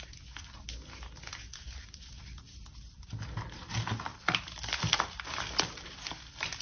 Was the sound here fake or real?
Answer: real